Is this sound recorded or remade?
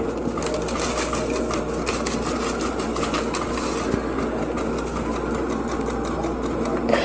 recorded